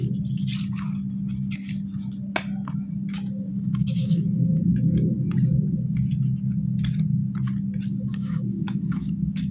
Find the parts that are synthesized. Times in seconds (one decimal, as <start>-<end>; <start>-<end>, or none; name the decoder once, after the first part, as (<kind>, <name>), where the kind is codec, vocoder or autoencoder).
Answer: 3.5-4.6 (autoencoder, DAC-VAE); 8.1-9.5